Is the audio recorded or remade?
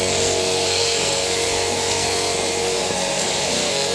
remade